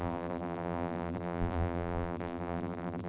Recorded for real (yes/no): no